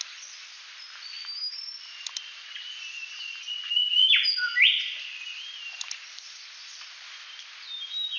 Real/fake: real